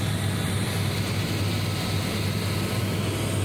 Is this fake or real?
real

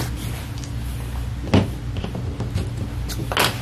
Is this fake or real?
real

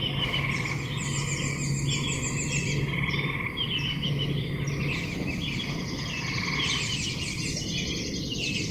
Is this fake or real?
real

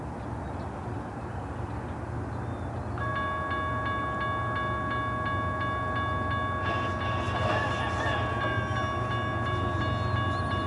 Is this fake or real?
real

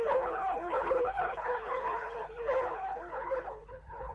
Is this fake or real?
fake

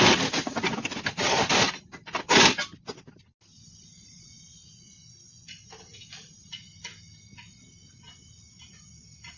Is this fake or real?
real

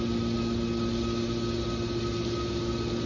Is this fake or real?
real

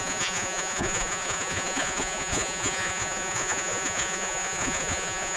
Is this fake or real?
fake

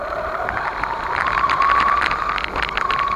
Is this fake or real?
real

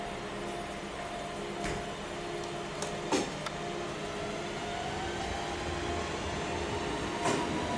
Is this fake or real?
real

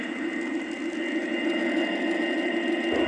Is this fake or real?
real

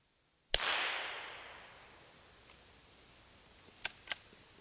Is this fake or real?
real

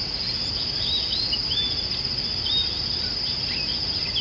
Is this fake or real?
real